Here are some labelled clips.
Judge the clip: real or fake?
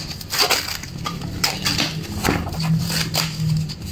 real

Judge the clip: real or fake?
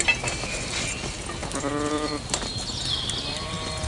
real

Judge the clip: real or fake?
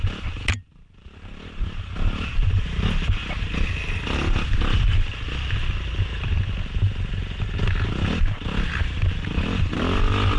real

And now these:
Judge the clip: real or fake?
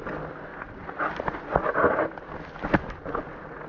real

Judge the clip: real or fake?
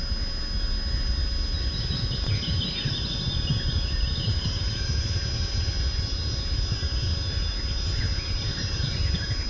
real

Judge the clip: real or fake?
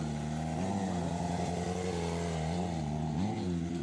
real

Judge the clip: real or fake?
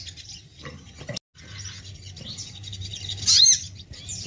real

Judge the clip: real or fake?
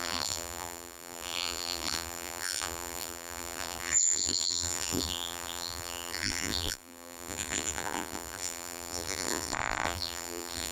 fake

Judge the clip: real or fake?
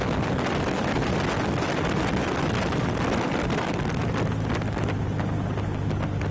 real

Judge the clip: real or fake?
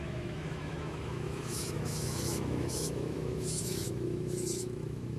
fake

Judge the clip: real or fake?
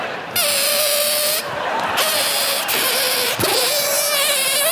real